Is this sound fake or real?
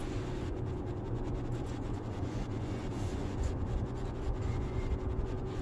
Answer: fake